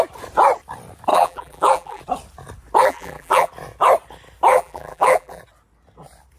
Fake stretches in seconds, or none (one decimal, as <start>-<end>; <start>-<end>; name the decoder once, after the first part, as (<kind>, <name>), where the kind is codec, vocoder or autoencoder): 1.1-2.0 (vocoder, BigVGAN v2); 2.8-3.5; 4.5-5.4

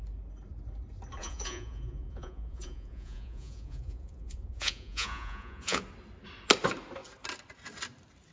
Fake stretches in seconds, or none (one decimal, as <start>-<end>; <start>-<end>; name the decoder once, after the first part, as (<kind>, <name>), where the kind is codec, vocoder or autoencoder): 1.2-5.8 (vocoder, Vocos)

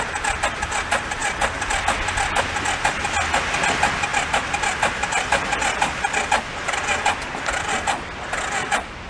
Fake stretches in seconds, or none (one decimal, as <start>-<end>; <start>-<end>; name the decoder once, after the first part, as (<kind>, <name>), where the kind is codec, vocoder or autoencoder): none